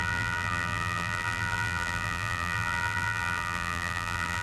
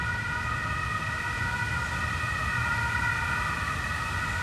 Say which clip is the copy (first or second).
first